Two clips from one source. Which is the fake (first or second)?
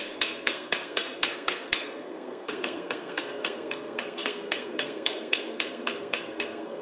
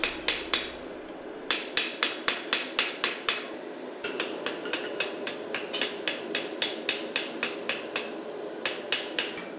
first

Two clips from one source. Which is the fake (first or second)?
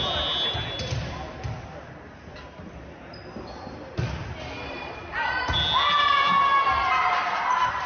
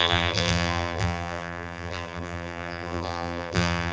second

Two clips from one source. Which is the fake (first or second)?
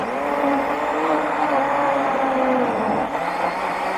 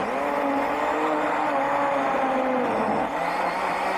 first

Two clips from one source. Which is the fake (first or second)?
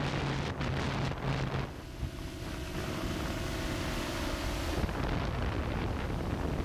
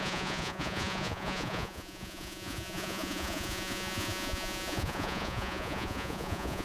second